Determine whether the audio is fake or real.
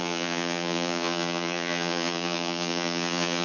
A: fake